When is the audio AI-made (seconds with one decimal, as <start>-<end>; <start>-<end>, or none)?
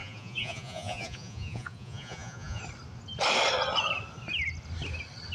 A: 0.0-2.6